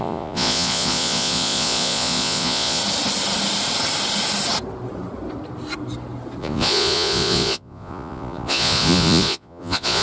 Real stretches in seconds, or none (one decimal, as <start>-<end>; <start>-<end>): 2.8-6.4